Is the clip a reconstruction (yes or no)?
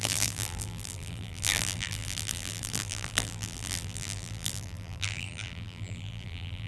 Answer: yes